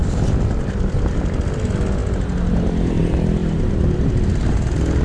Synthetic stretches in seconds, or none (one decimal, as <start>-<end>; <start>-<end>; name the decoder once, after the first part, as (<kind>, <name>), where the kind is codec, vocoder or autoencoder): none

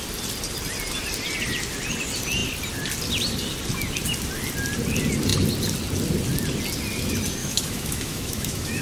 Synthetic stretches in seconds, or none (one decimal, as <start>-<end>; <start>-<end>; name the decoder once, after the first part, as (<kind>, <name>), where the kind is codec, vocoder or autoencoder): 7.4-8.8 (autoencoder, DAC-VAE)

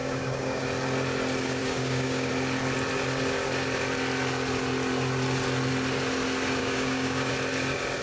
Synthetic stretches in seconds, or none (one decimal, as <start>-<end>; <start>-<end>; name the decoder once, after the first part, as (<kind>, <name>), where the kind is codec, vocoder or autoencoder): 0.0-0.6 (codec, DAC); 1.6-2.3; 6.6-7.3

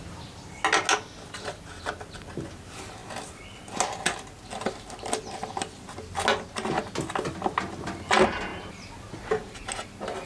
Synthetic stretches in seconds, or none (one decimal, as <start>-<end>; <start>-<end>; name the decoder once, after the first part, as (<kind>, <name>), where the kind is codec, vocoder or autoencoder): none

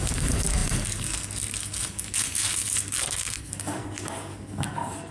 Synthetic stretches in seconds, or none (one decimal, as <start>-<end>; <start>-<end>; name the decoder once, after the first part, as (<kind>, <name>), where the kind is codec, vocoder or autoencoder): 0.0-5.1 (codec, SNAC)

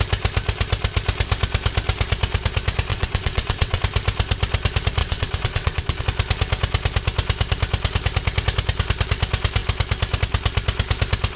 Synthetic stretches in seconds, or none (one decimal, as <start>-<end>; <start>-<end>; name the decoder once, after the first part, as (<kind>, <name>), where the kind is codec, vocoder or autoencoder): 2.9-3.8 (vocoder, WaveNeXt); 5.0-6.0

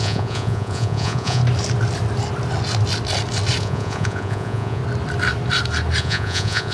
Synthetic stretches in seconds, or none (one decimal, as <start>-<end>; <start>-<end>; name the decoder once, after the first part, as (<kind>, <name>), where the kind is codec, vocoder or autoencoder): 0.0-1.4 (vocoder, Vocos); 3.6-4.8; 6.0-6.7

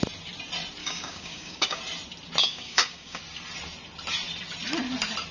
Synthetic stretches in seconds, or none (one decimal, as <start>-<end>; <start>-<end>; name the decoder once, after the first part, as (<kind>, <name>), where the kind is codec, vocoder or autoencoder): 0.8-1.8 (codec, DAC); 2.4-3.2